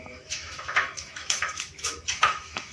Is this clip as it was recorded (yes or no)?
no